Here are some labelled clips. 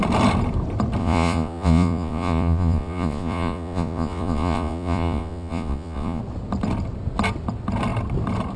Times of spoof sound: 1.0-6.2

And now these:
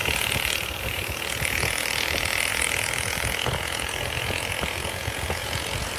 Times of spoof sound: 0.0-6.0

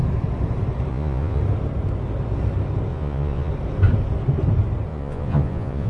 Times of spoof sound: 0.9-1.4; 2.9-3.5; 4.9-5.9

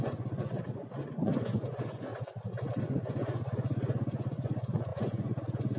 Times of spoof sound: 0.0-2.1; 2.8-5.8

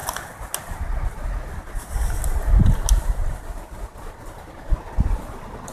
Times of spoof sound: none

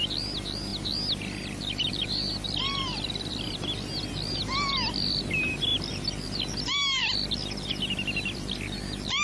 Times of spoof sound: none

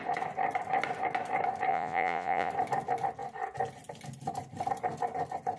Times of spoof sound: 1.7-2.5